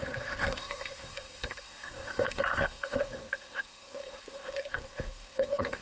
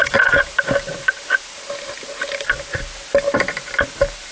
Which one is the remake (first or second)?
first